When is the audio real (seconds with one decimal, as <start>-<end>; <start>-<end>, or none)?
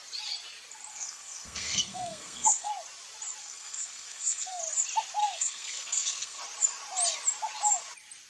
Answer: 0.0-0.9; 2.7-3.4; 4.6-5.2; 6.4-8.3